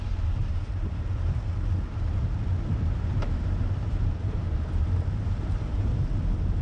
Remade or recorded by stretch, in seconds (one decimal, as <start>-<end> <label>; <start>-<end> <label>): 0.0-0.4 recorded; 0.4-1.4 remade; 1.4-2.7 recorded; 2.7-6.1 remade; 6.1-6.6 recorded